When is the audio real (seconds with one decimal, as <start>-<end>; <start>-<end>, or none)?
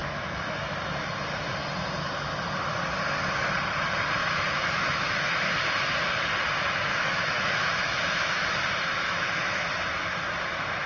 0.6-4.2; 5.6-6.9; 9.9-10.9